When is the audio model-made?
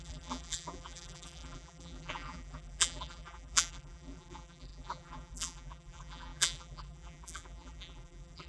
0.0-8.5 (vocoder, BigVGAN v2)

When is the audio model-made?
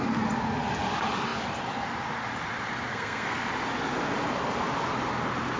2.9-3.5 (codec, SNAC)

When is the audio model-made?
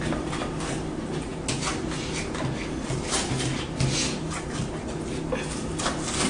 none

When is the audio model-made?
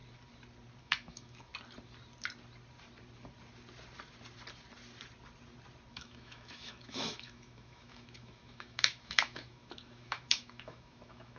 0.8-1.5 (autoencoder, DAC-VAE); 5.9-11.4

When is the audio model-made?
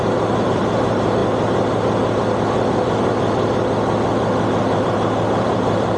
0.0-1.2 (vocoder, BigVGAN v2); 4.8-6.0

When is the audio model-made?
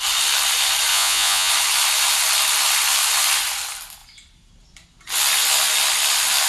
0.9-1.5 (vocoder, Vocos)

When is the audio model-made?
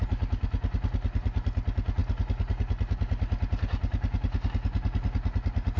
none